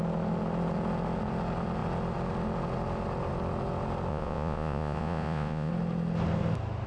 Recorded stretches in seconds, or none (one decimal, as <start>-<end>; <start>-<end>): 0.0-4.1; 5.7-6.9